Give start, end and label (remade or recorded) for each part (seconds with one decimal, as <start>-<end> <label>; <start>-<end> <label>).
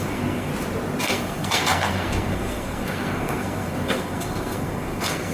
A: 0.0-0.5 remade; 0.5-1.0 recorded; 1.0-5.3 remade